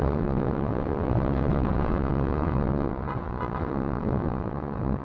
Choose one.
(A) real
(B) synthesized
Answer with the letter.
B